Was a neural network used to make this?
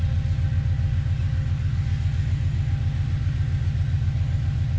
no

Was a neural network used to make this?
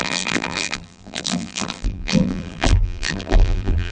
yes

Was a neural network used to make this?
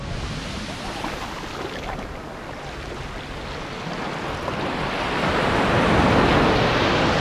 no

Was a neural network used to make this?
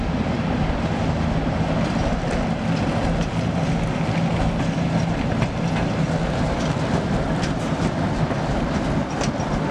no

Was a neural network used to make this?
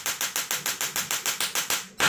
no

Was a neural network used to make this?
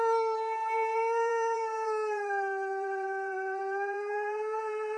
yes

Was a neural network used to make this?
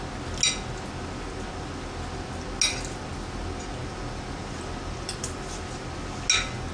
no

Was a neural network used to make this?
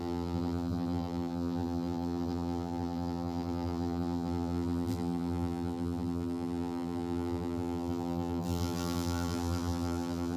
yes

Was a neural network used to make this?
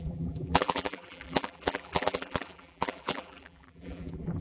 yes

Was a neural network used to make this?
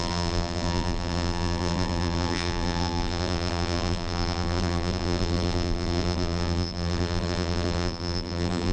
yes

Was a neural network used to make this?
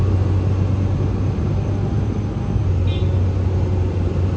no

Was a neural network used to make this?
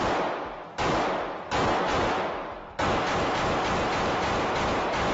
no